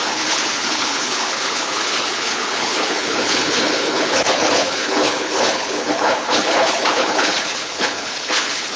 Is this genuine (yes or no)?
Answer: no